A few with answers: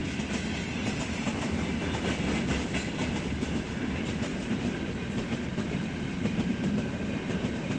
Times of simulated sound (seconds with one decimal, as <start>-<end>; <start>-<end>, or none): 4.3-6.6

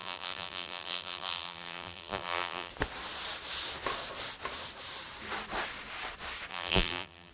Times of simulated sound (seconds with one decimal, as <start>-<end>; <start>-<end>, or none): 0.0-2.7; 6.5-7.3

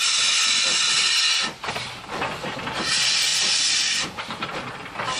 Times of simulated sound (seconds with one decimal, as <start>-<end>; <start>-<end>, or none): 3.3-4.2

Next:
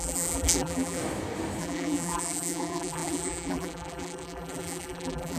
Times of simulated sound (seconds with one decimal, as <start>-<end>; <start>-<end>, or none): 0.0-1.0; 1.6-5.4

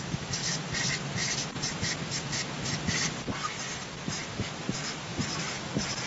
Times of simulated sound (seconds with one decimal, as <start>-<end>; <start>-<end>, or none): 0.0-0.4; 4.1-5.1

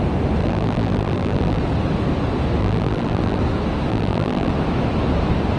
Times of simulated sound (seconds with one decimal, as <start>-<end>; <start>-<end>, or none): 0.4-1.6; 2.6-3.4; 3.9-4.5